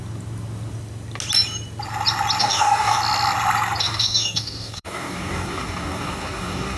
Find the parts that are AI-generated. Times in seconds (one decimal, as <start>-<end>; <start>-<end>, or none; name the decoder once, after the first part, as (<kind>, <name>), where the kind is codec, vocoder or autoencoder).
2.4-3.0 (codec, DAC); 3.8-6.8